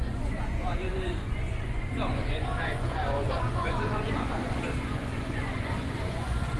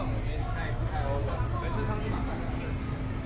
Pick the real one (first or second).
second